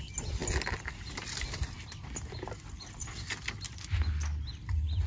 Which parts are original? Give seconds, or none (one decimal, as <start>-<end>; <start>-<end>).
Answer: 0.0-5.1